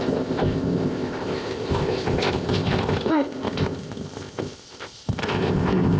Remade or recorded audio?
remade